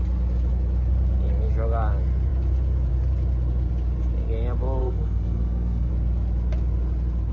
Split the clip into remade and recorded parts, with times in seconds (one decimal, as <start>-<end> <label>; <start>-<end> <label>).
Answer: 0.0-4.8 recorded; 4.8-5.9 remade; 5.9-7.3 recorded